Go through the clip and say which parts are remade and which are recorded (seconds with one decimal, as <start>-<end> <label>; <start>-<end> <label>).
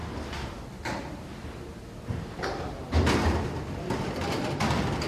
0.0-5.1 recorded